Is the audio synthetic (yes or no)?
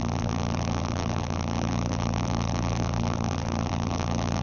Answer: yes